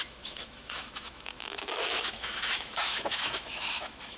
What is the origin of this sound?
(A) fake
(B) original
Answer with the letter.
A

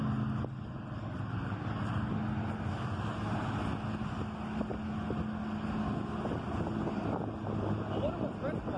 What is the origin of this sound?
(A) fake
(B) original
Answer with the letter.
B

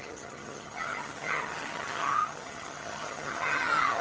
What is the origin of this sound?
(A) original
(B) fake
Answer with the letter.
B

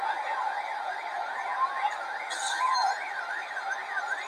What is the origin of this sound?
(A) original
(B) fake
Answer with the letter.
A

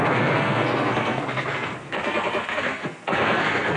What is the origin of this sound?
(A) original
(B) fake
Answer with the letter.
B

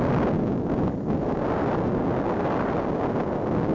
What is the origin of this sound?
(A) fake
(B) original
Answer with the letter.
B